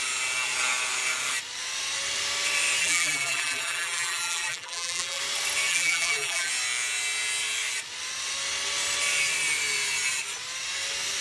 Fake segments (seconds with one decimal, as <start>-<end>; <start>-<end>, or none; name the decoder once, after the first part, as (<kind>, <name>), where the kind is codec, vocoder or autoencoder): 2.8-5.2 (vocoder, BigVGAN v2); 5.7-6.5